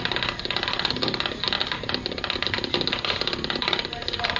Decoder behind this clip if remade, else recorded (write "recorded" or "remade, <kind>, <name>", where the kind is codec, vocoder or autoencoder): recorded